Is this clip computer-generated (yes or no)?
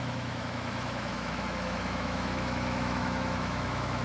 yes